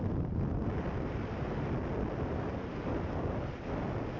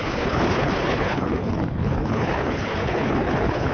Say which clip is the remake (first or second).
second